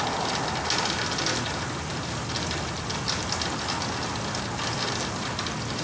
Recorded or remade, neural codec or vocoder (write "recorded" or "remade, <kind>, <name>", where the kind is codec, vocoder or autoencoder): recorded